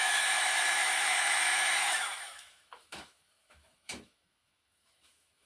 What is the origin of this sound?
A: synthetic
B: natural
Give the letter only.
A